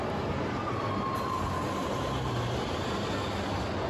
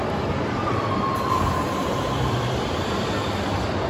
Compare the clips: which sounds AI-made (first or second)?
second